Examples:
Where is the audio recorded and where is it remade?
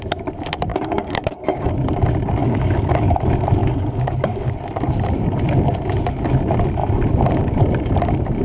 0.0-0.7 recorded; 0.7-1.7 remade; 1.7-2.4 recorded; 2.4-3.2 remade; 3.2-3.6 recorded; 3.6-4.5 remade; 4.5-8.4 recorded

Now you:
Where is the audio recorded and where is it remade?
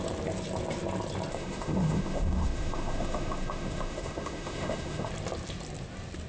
0.0-1.3 recorded; 1.3-5.1 remade; 5.1-6.3 recorded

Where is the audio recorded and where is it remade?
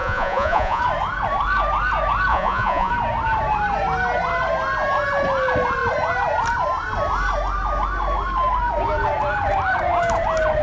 0.0-0.8 remade; 0.8-2.3 recorded; 2.3-2.9 remade; 2.9-10.6 recorded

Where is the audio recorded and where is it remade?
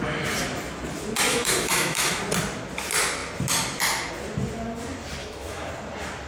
0.0-1.3 recorded; 1.3-2.2 remade; 2.2-5.2 recorded; 5.2-5.7 remade; 5.7-6.3 recorded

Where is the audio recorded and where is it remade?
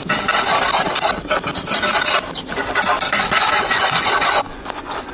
0.0-3.1 recorded; 3.1-5.1 remade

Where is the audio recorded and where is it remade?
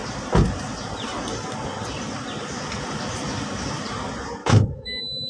0.0-4.4 recorded; 4.4-5.3 remade